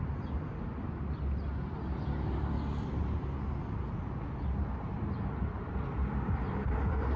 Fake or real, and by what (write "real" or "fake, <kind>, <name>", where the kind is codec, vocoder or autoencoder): real